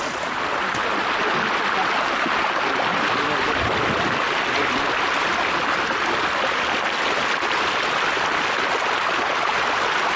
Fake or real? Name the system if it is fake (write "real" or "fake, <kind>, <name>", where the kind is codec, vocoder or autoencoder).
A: real